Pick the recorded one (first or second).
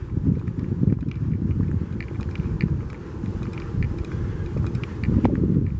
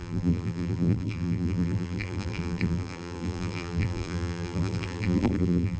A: first